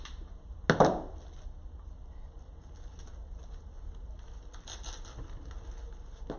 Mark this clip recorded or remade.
recorded